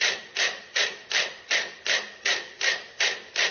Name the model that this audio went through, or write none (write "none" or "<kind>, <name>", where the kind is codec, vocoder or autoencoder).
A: vocoder, BigVGAN v2